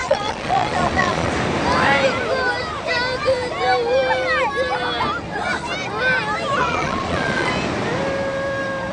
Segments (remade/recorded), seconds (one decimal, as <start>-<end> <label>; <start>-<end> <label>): 0.0-1.3 remade; 1.3-6.6 recorded; 6.6-7.5 remade; 7.5-8.9 recorded